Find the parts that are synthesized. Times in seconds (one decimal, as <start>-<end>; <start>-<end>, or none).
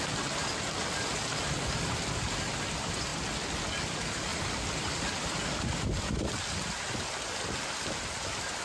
0.4-1.2; 4.3-5.9